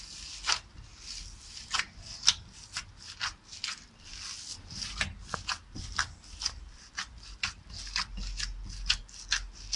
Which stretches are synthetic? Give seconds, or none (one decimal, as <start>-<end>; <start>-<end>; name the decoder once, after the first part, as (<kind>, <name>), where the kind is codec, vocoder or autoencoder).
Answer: 0.9-1.8 (vocoder, BigVGAN v2); 4.5-5.0